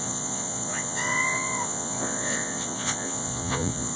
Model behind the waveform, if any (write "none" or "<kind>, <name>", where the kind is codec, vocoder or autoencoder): vocoder, Vocos